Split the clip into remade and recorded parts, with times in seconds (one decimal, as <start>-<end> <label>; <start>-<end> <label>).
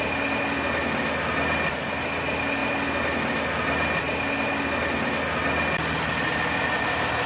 0.0-7.3 recorded